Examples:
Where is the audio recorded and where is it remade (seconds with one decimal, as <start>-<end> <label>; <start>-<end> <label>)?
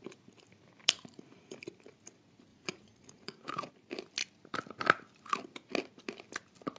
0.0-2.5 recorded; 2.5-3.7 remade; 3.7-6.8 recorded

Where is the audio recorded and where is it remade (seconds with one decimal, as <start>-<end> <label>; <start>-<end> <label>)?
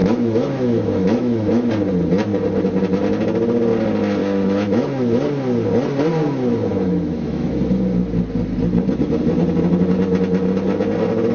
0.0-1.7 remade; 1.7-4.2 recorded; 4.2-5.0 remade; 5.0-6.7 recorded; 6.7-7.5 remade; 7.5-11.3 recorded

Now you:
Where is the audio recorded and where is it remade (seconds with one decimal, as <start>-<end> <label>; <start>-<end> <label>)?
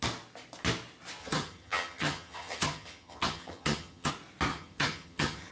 0.0-1.2 recorded; 1.2-4.1 remade; 4.1-4.5 recorded; 4.5-5.5 remade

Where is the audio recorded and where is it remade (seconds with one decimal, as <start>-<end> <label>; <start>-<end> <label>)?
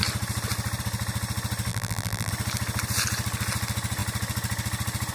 0.0-1.7 recorded; 1.7-2.3 remade; 2.3-5.1 recorded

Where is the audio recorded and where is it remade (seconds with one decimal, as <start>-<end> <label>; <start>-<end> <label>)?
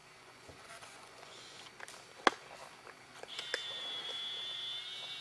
0.0-1.6 remade; 1.6-5.2 recorded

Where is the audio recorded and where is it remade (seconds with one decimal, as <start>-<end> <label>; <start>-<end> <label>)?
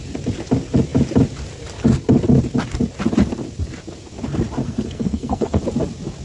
0.0-4.6 recorded; 4.6-5.6 remade; 5.6-6.2 recorded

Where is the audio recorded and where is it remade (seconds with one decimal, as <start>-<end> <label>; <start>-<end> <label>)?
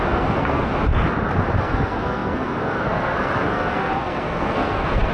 0.0-0.7 remade; 0.7-1.6 recorded; 1.6-5.1 remade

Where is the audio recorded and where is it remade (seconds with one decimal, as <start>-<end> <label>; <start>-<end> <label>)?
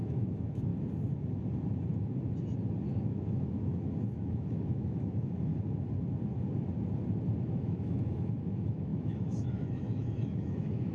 0.0-0.7 remade; 0.7-3.1 recorded; 3.1-5.5 remade; 5.5-7.4 recorded; 7.4-10.9 remade